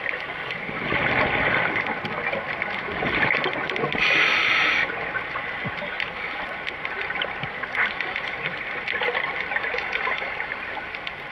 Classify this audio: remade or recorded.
recorded